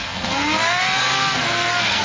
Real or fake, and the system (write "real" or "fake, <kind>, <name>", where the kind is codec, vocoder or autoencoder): fake, codec, SNAC